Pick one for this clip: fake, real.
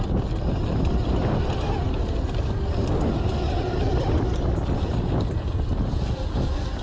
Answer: real